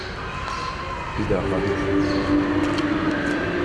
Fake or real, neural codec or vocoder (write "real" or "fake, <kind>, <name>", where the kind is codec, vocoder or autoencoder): real